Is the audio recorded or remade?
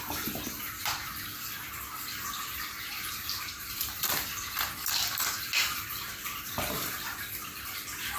remade